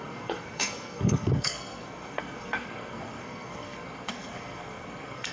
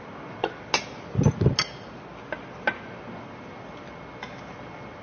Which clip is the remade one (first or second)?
first